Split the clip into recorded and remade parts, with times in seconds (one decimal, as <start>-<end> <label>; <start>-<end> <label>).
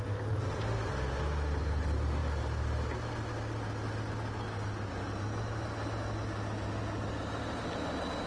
0.0-8.3 recorded